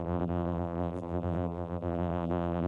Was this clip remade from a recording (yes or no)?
yes